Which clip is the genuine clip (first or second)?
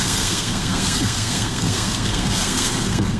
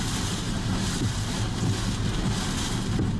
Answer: second